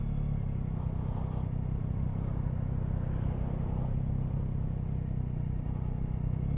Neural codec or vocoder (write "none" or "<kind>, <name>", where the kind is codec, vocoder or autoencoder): none